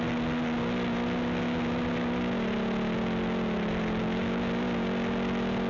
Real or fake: real